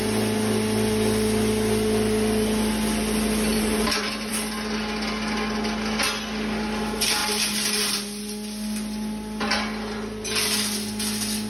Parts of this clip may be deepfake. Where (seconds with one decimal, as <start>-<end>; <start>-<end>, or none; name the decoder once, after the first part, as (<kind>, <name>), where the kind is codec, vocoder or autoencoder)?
3.5-4.3 (vocoder, BigVGAN v2); 7.2-7.8